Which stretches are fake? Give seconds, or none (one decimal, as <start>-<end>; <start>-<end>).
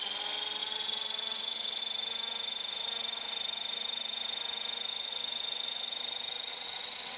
0.6-1.8; 4.9-5.9; 6.5-7.2